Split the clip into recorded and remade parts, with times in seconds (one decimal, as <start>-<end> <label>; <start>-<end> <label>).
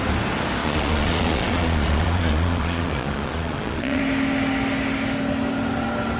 0.0-0.6 recorded; 0.6-4.0 remade; 4.0-6.2 recorded